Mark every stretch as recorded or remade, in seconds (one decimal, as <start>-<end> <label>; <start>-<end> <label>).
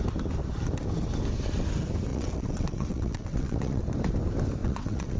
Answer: 0.0-2.1 recorded; 2.1-3.8 remade; 3.8-4.6 recorded; 4.6-5.2 remade